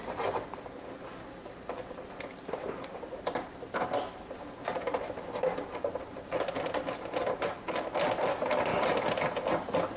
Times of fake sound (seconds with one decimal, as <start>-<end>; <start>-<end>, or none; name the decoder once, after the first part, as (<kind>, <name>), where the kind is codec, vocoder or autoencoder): none